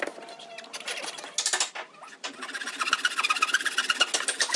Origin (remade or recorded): recorded